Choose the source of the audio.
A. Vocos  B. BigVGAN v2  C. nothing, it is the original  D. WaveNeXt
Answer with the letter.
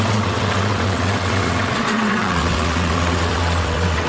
D